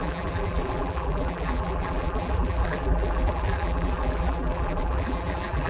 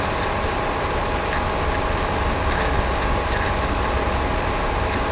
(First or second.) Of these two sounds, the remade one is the first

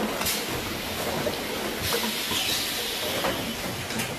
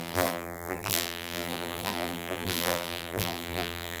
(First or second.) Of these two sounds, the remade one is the second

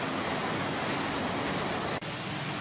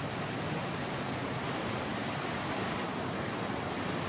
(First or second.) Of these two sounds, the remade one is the second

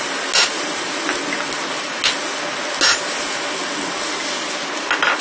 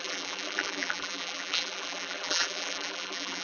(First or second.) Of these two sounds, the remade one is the second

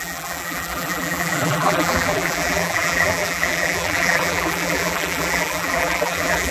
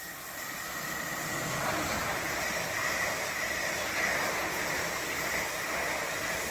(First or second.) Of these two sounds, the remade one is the first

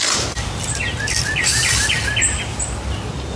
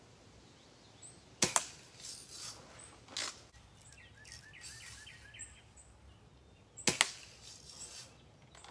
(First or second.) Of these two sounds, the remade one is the first